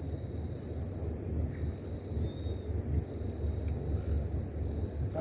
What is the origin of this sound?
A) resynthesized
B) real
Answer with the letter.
B